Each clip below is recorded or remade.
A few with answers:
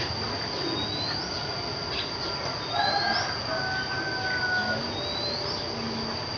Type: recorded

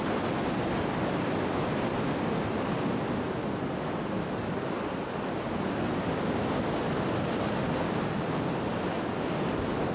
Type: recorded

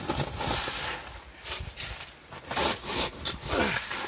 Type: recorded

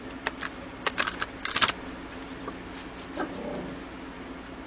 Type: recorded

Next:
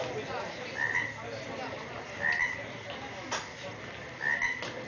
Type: recorded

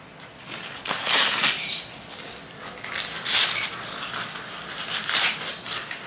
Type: recorded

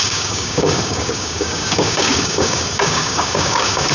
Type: remade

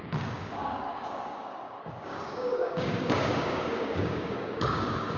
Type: remade